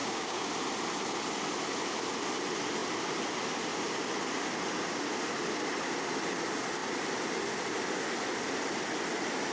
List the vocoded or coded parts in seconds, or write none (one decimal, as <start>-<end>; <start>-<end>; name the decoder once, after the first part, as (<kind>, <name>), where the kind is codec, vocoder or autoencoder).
0.0-0.5 (codec, DAC)